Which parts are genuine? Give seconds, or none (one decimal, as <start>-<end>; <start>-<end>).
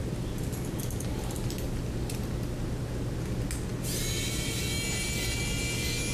0.0-6.1